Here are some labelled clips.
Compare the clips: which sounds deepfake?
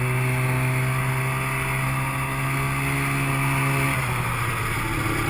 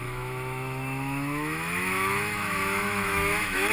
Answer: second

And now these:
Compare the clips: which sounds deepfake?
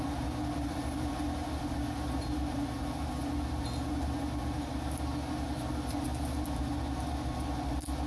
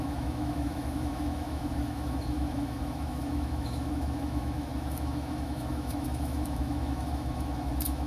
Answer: second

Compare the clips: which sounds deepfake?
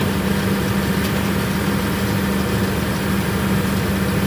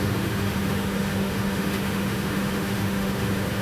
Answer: second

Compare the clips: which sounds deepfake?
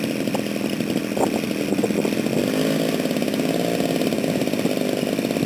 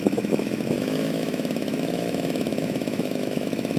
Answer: second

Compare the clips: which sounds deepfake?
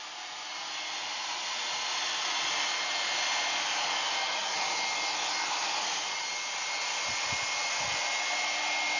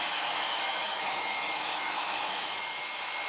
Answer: second